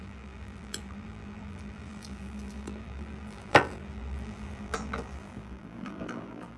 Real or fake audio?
fake